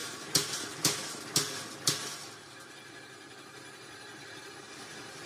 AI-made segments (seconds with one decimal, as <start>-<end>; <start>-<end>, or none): none